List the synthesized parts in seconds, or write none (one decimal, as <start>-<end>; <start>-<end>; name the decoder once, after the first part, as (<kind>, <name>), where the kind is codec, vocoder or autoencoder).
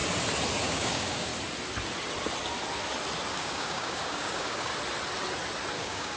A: 0.6-1.3 (codec, DAC); 3.3-4.7; 5.8-6.2